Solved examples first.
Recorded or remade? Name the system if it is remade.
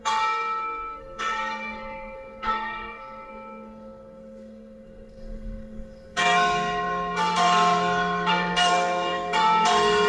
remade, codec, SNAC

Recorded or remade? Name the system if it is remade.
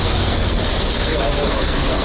remade, codec, SNAC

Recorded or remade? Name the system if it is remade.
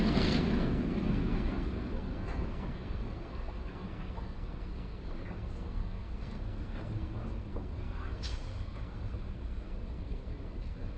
remade, codec, SNAC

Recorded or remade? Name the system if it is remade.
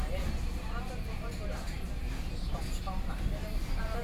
recorded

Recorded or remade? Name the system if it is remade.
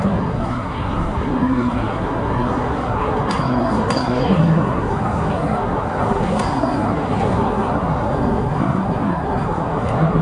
remade, codec, SNAC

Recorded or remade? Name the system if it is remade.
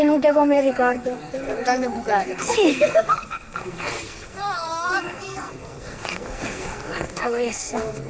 remade, codec, SNAC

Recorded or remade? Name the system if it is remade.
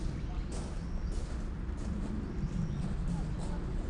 recorded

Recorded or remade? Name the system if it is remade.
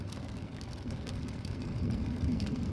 remade, codec, SNAC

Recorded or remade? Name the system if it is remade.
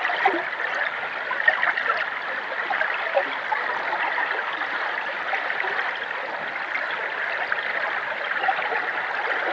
recorded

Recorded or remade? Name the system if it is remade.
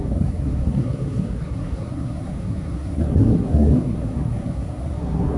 remade, codec, SNAC